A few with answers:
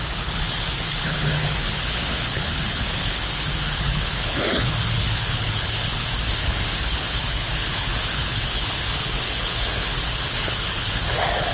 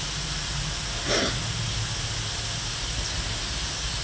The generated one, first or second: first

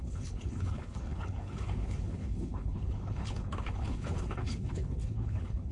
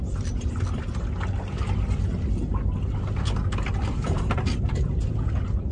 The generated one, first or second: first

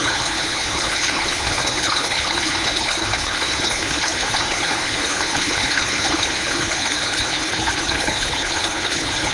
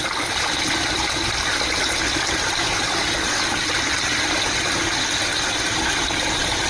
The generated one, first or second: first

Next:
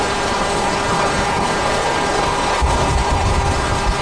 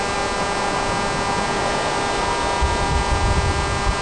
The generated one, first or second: first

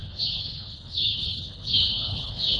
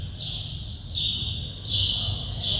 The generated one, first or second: first